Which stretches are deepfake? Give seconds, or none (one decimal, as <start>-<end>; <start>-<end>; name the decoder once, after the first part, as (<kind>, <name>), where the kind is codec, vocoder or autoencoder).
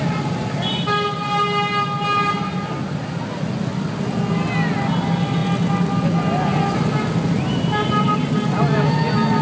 none